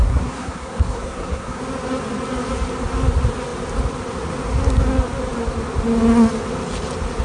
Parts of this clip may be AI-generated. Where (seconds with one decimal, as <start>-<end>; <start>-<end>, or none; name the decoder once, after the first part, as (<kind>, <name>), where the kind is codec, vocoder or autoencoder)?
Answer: 0.0-1.6 (codec, SNAC)